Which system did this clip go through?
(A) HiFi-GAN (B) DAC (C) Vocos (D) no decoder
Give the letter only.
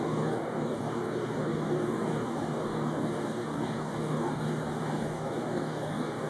B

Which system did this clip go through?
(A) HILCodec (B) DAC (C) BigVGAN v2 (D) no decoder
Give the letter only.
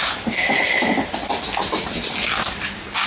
D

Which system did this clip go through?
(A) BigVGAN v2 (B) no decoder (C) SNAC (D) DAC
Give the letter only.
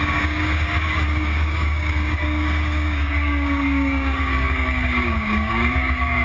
D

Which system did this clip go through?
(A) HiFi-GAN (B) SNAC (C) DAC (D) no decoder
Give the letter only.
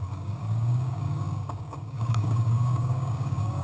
C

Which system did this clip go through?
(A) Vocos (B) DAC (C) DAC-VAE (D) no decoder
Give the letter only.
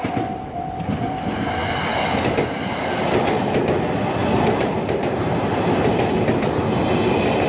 D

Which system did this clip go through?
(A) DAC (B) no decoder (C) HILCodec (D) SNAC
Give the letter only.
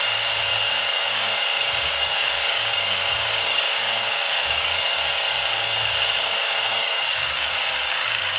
A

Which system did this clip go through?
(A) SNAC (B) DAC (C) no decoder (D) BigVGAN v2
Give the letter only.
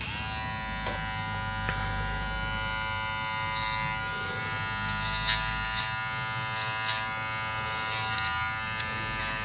C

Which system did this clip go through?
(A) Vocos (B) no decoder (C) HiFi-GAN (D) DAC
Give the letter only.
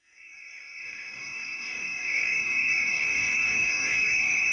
D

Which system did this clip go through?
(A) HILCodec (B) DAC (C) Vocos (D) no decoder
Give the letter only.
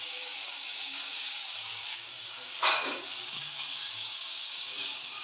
B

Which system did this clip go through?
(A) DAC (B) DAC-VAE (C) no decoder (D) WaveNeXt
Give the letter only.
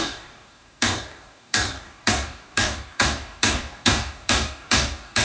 A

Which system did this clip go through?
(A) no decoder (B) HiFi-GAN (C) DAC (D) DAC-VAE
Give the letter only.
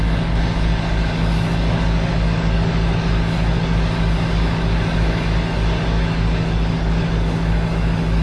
C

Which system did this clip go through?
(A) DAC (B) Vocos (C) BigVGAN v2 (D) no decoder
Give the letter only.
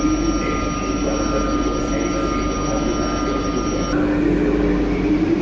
D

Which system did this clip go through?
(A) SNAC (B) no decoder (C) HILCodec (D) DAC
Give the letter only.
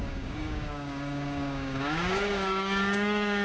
D